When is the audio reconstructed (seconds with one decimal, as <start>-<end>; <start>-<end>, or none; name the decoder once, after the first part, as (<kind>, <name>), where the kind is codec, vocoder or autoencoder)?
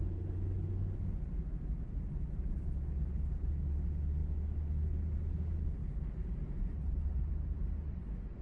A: 4.2-4.8 (autoencoder, DAC-VAE)